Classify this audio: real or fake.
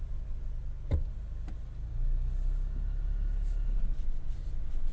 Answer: real